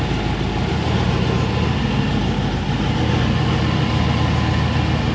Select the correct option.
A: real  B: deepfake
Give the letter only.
A